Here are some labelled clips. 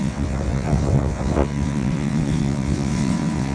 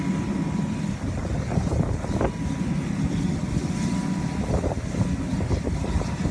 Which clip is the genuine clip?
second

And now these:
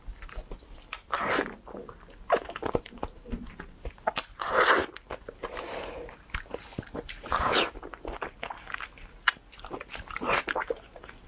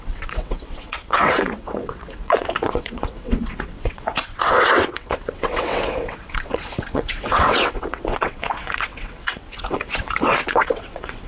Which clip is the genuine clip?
first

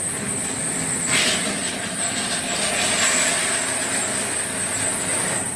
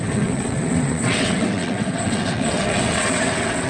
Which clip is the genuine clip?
first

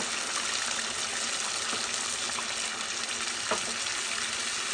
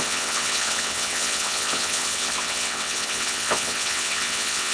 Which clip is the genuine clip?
first